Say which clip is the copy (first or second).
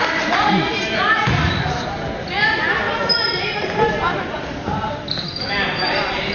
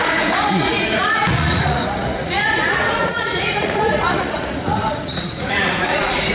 second